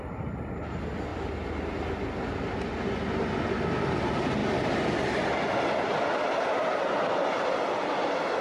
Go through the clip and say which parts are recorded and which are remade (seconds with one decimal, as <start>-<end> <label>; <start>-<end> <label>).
0.0-8.4 recorded

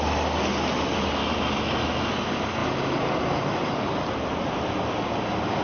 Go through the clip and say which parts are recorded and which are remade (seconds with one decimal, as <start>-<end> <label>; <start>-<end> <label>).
0.0-1.2 recorded; 1.2-2.1 remade; 2.1-5.6 recorded